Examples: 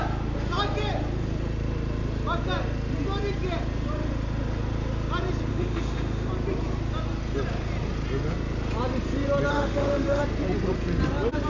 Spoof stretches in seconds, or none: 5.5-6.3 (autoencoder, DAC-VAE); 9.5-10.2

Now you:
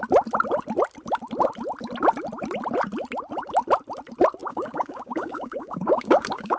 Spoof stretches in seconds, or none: 4.4-6.6 (codec, DAC)

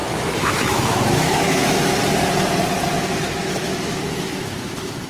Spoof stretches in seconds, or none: 0.0-1.9 (autoencoder, DAC-VAE); 3.2-5.1